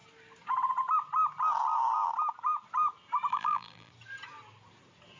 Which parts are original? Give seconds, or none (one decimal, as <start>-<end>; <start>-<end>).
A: 0.0-3.3; 3.9-5.2